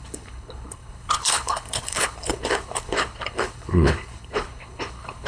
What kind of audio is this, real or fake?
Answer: fake